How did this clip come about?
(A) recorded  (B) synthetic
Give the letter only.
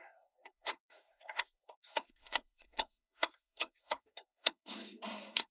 B